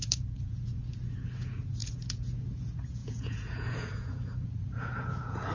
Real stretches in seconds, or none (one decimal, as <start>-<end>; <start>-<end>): none